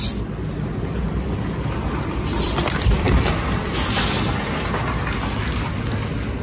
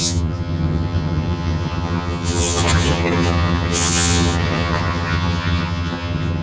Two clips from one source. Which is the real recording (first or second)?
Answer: first